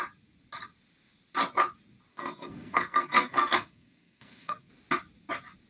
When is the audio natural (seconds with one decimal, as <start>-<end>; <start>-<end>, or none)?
0.0-2.1; 4.7-5.7